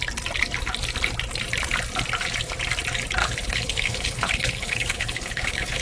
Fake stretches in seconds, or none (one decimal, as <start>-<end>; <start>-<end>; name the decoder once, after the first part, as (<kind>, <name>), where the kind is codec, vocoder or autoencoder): 3.2-5.8 (codec, HILCodec)